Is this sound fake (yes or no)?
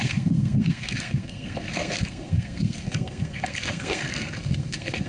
yes